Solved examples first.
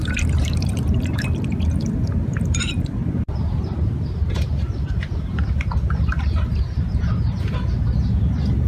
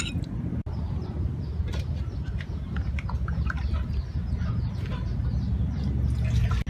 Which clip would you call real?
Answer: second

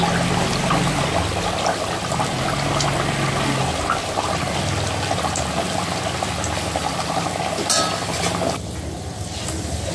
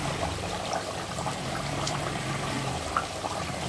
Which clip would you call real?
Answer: first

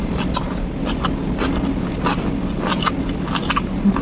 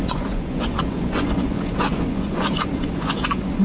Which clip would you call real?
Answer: first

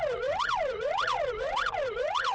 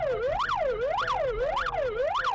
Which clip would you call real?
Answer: second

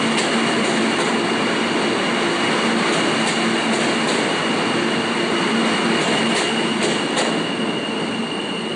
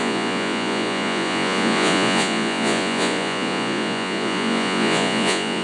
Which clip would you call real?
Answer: first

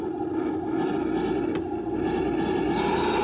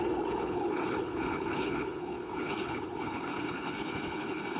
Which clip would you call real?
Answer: first